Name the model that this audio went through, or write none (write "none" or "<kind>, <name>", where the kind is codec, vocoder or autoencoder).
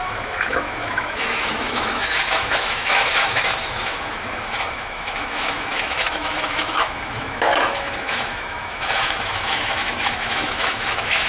autoencoder, DAC-VAE